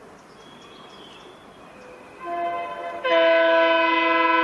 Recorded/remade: recorded